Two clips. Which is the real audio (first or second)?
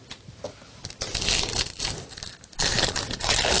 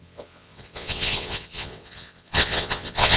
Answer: first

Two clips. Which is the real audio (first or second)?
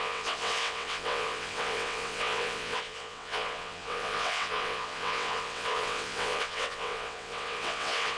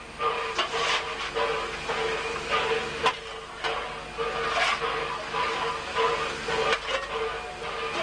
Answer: second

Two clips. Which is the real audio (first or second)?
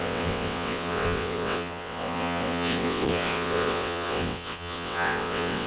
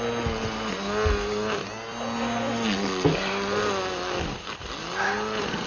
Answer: second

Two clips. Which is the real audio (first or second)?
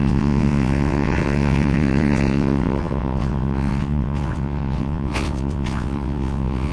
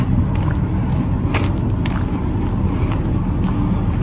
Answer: second